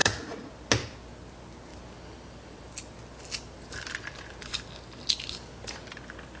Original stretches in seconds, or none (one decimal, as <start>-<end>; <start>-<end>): 0.5-6.4